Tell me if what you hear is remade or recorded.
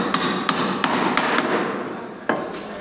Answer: recorded